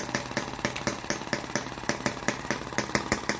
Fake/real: real